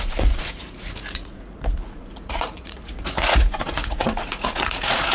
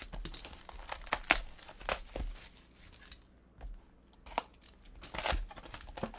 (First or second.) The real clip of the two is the second